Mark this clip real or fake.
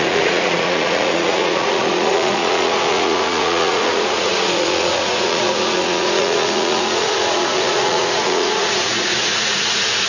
fake